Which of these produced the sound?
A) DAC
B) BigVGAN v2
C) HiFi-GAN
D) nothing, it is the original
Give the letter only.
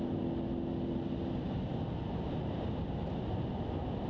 D